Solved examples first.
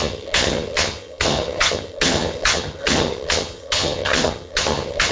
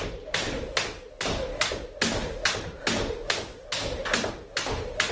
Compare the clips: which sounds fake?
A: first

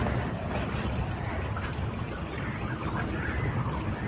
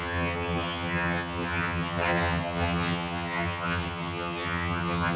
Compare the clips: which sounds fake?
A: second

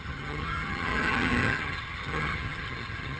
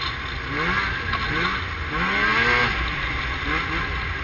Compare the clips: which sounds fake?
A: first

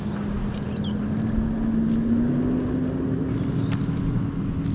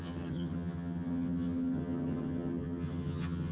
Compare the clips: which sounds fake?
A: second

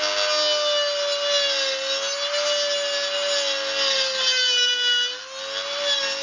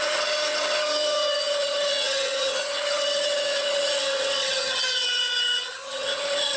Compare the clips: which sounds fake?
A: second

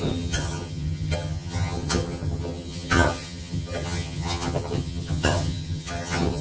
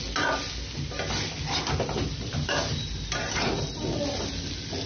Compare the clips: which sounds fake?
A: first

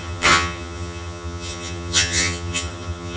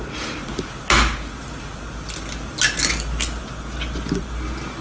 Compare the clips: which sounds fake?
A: first